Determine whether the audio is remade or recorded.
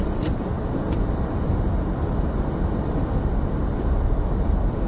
recorded